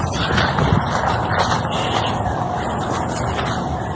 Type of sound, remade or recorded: recorded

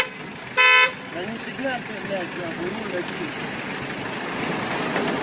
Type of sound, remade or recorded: recorded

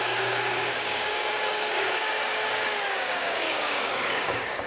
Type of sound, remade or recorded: remade